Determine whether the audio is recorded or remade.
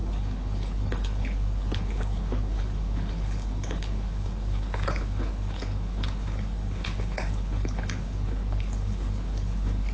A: remade